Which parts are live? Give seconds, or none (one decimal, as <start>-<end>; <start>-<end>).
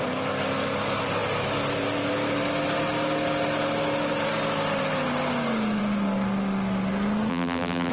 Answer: 0.0-7.3